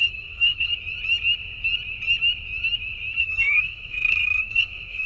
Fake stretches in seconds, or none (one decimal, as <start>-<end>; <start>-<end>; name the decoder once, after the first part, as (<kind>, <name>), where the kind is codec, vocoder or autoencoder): 0.0-0.7 (codec, SNAC); 3.2-5.1